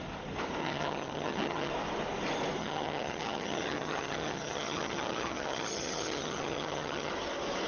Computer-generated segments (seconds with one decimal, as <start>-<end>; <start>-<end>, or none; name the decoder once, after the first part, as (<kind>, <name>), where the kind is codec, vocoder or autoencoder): 0.6-1.7 (vocoder, HiFi-GAN); 2.6-7.1